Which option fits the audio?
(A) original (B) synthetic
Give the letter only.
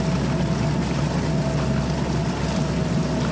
A